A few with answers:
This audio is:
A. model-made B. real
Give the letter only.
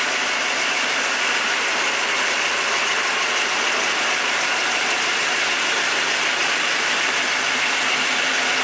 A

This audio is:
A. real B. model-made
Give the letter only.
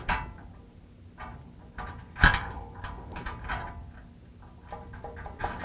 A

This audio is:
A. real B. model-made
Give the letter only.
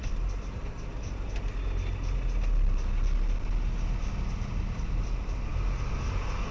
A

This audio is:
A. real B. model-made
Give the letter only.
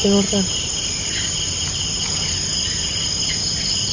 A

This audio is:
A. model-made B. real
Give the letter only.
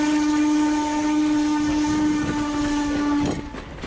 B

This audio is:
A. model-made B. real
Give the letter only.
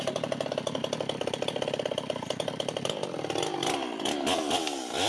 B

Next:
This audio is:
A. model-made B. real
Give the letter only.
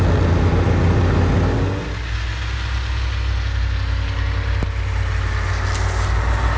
B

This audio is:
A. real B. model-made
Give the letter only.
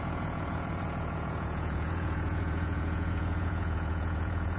B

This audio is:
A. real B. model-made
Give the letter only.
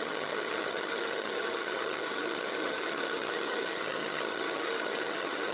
B